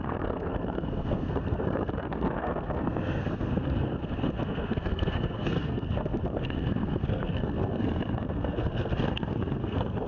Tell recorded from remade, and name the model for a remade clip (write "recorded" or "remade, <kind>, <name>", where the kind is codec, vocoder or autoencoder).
remade, codec, SNAC